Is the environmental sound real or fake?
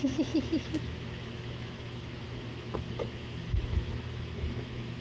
fake